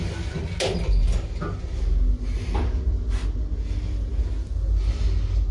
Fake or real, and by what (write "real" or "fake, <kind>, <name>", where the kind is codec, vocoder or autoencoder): real